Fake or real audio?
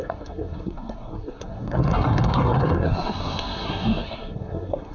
fake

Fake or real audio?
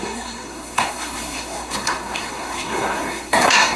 fake